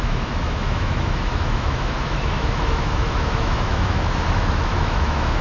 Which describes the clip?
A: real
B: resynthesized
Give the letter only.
B